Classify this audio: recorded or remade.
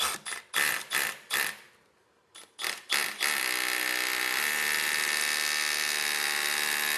recorded